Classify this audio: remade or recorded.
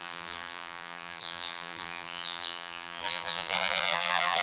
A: remade